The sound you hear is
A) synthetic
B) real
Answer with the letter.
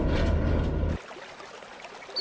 B